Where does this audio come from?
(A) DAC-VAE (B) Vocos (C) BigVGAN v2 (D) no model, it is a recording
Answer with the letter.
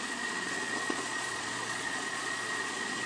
B